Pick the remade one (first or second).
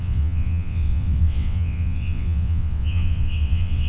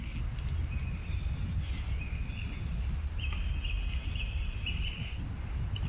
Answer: first